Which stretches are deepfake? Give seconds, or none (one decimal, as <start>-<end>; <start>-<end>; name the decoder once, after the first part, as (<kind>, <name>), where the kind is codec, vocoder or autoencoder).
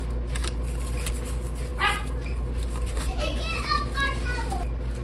none